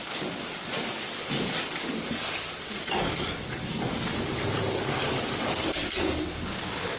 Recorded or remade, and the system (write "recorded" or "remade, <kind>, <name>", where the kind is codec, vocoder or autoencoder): remade, codec, DAC